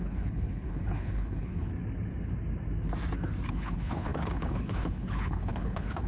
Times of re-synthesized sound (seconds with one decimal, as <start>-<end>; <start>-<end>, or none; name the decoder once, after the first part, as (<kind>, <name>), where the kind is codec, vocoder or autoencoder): 0.0-1.7 (codec, HILCodec); 3.5-6.1